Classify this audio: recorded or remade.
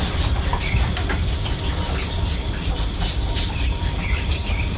remade